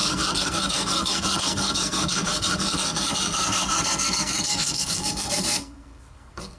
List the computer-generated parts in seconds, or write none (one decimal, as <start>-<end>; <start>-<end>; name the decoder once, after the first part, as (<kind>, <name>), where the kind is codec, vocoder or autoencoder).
0.0-6.6 (codec, SNAC)